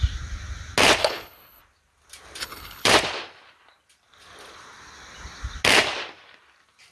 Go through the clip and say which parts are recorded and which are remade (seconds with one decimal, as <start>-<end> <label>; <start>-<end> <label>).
0.0-1.0 recorded; 1.0-1.6 remade; 1.6-2.4 recorded; 2.4-2.9 remade; 2.9-6.9 recorded